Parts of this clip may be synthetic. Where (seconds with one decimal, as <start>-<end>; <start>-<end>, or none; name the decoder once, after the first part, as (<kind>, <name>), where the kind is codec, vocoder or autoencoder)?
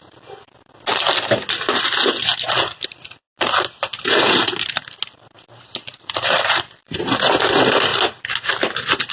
none